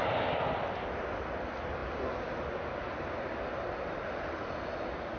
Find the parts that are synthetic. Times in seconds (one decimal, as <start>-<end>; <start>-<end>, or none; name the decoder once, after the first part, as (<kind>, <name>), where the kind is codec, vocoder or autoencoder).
none